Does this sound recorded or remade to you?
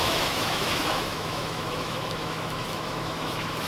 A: remade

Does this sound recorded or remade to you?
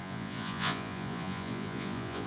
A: remade